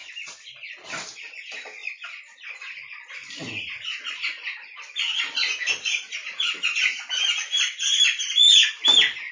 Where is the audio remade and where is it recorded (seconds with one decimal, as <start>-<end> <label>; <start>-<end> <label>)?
0.0-0.7 remade; 0.7-9.3 recorded